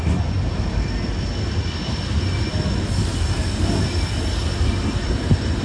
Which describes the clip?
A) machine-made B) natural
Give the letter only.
B